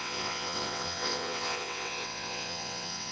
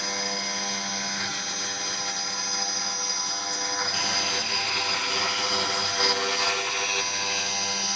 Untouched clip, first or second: second